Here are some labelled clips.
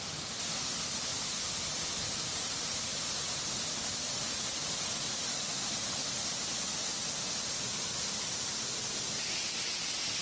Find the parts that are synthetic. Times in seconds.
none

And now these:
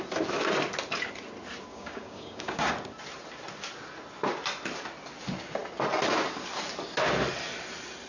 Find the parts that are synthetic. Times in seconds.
1.7-2.7 (codec, DAC)

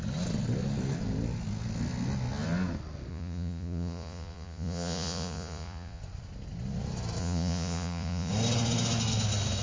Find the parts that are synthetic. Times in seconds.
3.1-6.0 (vocoder, Vocos); 7.2-8.3